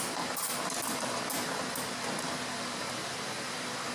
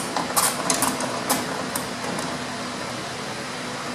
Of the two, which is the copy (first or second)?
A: first